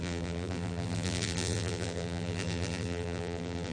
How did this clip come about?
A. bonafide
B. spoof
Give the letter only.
B